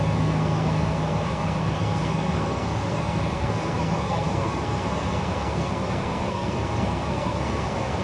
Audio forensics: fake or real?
fake